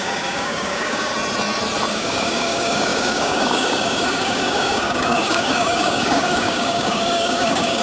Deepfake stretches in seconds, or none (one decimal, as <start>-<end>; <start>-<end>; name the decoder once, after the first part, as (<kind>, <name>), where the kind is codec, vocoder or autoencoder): 0.0-1.1 (codec, DAC); 1.9-7.8